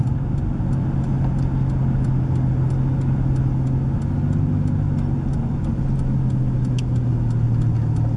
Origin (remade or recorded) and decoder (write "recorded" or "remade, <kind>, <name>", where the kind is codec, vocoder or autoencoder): recorded